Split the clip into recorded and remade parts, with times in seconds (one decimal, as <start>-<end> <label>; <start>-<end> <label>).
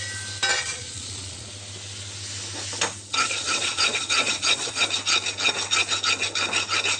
0.0-0.5 recorded; 0.5-1.5 remade; 1.5-3.1 recorded; 3.1-4.8 remade; 4.8-7.0 recorded